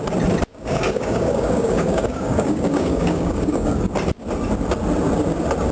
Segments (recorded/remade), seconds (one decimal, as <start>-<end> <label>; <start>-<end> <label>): 0.0-0.5 recorded; 0.5-3.9 remade; 3.9-5.7 recorded